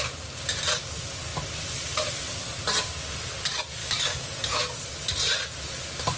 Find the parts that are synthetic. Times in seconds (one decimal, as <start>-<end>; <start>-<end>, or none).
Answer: 3.8-4.6